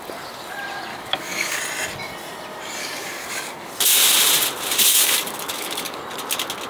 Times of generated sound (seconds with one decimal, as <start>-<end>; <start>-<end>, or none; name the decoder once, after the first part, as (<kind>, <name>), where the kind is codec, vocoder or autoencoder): 0.9-1.6 (codec, DAC); 2.8-3.7; 4.9-6.0